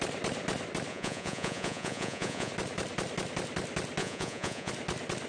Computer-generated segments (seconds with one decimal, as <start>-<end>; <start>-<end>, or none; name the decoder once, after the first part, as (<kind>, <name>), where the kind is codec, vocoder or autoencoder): 0.9-2.5 (vocoder, Vocos); 4.0-4.7